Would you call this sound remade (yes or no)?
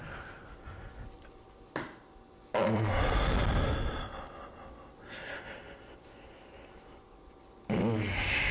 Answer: no